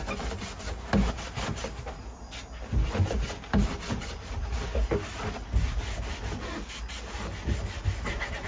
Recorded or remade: recorded